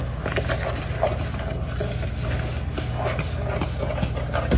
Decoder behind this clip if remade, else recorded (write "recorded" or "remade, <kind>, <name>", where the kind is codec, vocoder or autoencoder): recorded